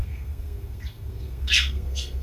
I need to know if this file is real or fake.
fake